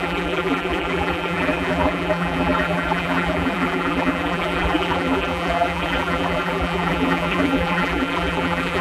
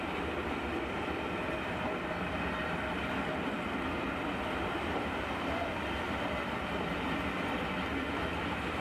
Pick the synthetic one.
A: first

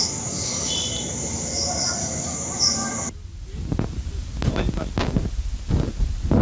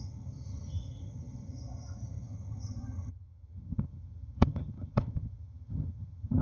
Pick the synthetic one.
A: second